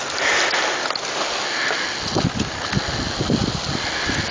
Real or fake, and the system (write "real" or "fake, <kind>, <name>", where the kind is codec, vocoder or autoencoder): real